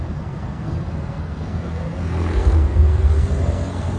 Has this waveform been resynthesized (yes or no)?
yes